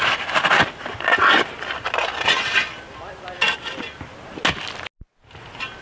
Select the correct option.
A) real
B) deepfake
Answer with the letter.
A